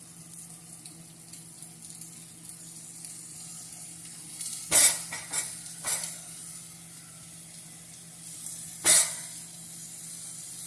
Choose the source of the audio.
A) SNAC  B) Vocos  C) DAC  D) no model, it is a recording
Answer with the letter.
D